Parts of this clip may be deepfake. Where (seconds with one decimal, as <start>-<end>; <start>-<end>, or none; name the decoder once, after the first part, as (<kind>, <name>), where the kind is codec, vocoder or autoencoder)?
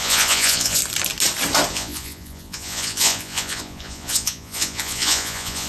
0.0-0.8 (vocoder, Vocos); 1.7-5.7